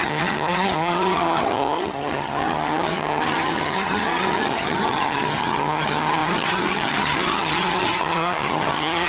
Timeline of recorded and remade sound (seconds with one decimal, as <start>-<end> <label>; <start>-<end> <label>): 0.0-9.1 remade